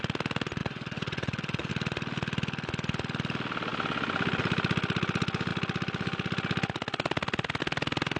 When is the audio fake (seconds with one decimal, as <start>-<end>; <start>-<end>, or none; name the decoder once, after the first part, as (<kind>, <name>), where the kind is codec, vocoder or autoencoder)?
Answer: 0.6-1.7 (vocoder, WaveNeXt)